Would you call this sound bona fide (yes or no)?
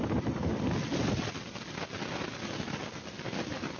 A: yes